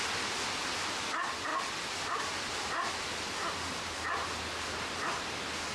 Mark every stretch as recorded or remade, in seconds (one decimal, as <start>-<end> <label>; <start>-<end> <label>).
0.0-5.7 recorded